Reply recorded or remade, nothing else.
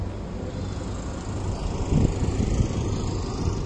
recorded